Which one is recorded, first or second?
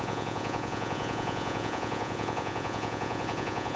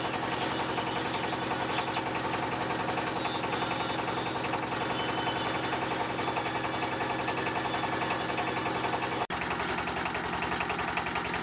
second